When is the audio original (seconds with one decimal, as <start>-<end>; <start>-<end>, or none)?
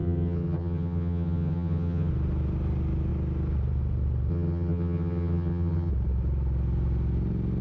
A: 2.1-4.3; 5.9-7.6